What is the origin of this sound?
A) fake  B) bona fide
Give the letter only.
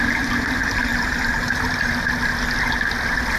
B